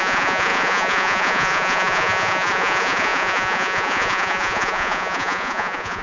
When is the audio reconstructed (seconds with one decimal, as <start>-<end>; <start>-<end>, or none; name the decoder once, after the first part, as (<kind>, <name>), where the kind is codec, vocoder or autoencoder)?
0.0-6.0 (vocoder, Vocos)